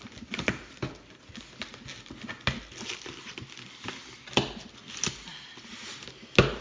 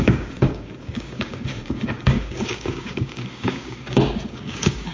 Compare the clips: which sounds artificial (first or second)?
second